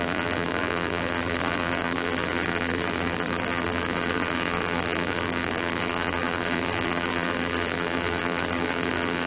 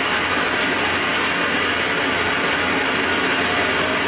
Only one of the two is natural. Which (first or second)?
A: second